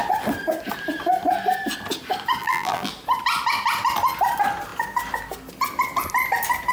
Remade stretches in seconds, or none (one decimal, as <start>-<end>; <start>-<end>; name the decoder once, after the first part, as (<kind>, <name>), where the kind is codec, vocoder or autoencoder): 2.4-2.9 (vocoder, BigVGAN v2)